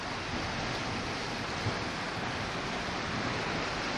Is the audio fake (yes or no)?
no